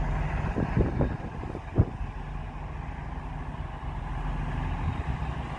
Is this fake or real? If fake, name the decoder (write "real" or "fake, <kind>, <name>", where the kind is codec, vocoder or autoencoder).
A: real